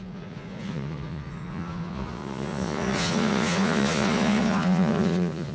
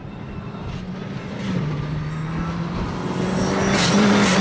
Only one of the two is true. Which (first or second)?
second